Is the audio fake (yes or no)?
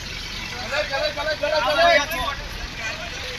no